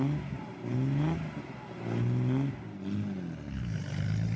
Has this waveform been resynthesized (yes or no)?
no